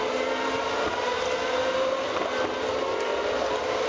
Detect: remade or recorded recorded